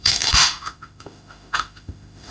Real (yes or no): no